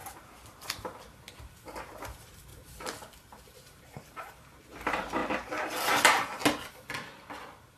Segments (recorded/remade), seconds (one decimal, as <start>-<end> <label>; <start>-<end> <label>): 0.0-1.3 recorded; 1.3-6.4 remade; 6.4-7.8 recorded